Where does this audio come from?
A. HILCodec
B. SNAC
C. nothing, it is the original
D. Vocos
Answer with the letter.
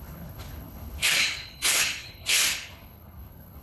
A